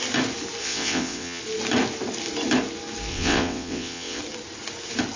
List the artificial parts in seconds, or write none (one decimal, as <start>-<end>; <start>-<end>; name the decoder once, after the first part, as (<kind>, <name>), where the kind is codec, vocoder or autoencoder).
0.6-1.4 (vocoder, WaveNeXt); 3.1-4.2

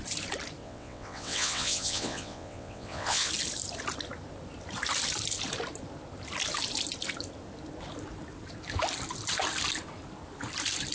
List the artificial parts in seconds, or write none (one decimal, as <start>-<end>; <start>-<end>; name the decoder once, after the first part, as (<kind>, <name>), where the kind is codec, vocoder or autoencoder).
0.6-3.3 (vocoder, WaveNeXt)

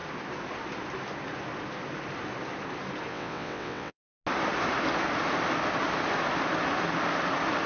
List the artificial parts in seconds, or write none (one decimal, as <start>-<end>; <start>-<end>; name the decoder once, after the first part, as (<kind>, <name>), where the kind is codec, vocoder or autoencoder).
3.1-4.1 (vocoder, WaveNeXt)

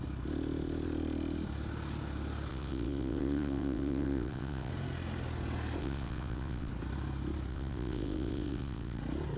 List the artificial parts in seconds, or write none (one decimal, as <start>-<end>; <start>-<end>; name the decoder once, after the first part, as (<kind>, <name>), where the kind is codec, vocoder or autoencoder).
2.5-4.7 (vocoder, WaveNeXt); 5.8-6.7; 7.5-9.0

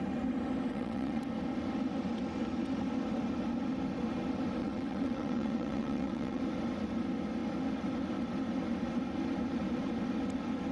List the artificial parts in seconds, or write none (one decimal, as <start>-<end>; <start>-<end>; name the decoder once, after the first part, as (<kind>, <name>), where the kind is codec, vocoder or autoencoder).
0.7-1.2 (vocoder, WaveNeXt); 4.6-6.4

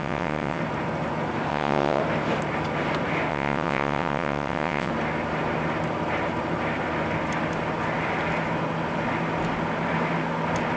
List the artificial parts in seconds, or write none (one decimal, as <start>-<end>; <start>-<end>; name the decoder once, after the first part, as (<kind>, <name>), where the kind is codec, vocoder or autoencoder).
0.0-0.6 (vocoder, WaveNeXt); 1.5-2.0; 3.3-4.9

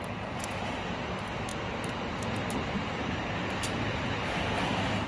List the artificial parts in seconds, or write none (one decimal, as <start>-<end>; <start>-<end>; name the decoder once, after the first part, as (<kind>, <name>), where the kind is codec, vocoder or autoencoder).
none

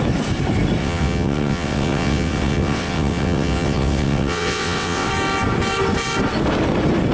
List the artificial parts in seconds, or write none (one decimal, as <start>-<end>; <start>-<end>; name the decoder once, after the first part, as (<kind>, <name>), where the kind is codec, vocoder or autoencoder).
0.8-5.1 (vocoder, WaveNeXt)